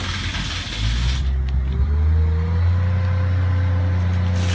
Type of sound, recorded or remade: recorded